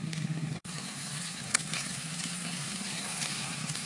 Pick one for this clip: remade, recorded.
remade